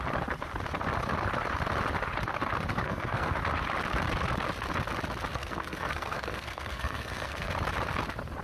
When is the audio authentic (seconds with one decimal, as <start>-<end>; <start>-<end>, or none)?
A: 0.0-2.7; 3.3-5.3; 7.5-8.4

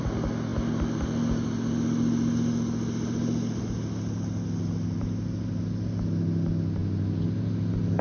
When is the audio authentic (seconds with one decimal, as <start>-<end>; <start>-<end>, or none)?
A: 0.0-8.0